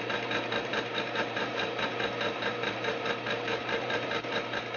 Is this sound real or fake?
fake